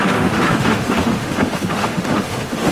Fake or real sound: fake